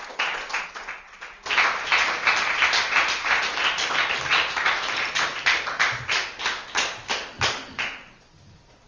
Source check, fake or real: real